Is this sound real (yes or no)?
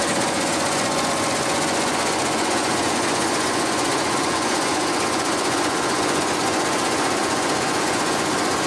no